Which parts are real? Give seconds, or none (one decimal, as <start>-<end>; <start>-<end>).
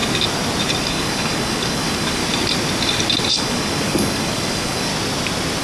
0.0-0.8; 2.2-3.3; 4.9-5.6